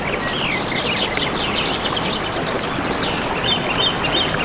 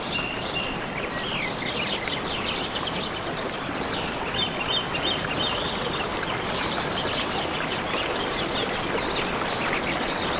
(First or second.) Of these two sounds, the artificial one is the second